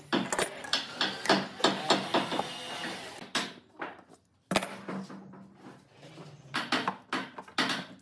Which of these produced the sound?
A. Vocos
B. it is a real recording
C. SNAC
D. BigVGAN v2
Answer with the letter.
B